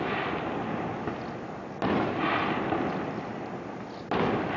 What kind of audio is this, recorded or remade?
recorded